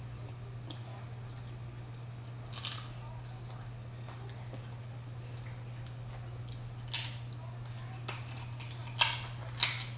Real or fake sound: real